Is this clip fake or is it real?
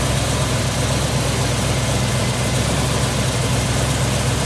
real